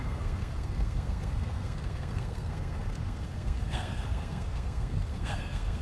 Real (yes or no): no